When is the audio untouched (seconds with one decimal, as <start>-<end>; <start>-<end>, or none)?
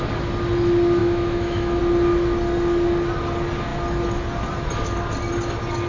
0.0-1.0; 1.8-5.9